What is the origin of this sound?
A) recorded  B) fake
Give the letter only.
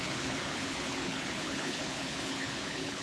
B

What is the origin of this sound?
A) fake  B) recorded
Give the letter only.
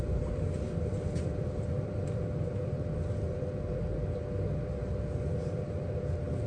B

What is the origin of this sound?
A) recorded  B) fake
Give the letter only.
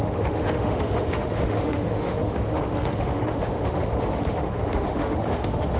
B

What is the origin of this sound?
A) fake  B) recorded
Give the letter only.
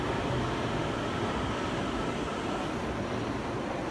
B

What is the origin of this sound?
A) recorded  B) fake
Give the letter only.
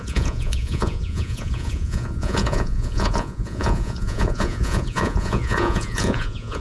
B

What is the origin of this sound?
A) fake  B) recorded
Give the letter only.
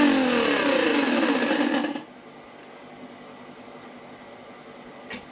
B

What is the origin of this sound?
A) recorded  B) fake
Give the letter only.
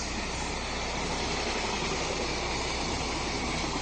A